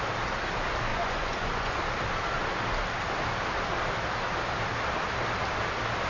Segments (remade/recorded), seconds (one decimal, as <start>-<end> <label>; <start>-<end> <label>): 0.0-0.9 recorded; 0.9-1.8 remade; 1.8-6.1 recorded